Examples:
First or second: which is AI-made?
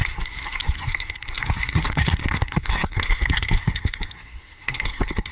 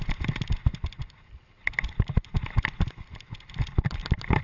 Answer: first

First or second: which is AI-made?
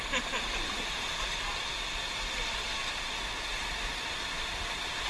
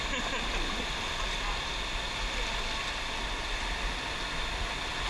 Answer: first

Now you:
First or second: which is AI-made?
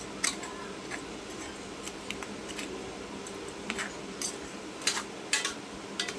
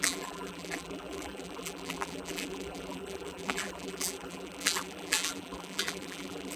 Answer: second